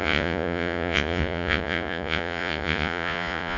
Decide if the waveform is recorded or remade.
remade